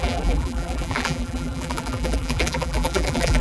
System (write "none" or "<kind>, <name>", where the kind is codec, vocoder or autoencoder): vocoder, BigVGAN v2